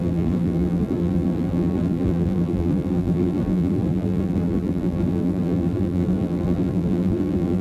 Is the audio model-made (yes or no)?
yes